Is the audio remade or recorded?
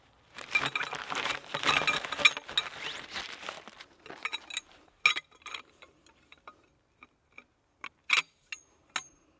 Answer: recorded